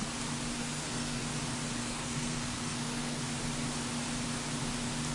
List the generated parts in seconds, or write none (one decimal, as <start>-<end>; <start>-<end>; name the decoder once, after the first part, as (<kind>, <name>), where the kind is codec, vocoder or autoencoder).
0.6-1.3 (codec, SNAC); 1.8-3.2